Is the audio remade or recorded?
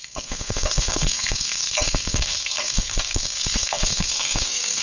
remade